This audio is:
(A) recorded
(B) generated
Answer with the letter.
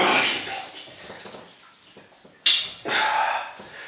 A